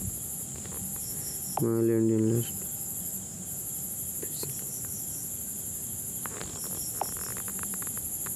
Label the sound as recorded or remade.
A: recorded